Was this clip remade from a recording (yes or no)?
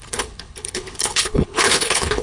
yes